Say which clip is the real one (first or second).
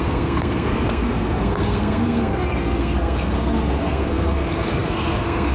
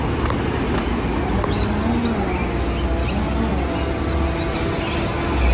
second